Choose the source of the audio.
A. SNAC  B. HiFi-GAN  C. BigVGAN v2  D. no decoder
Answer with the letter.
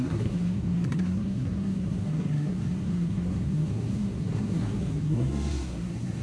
A